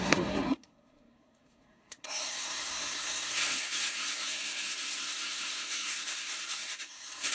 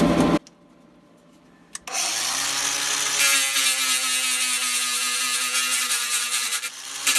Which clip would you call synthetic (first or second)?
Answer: first